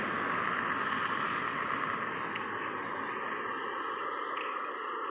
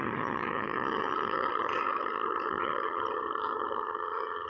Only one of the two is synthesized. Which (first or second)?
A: second